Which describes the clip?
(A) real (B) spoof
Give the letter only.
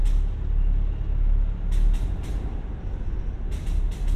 A